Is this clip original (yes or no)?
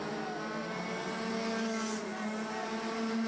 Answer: yes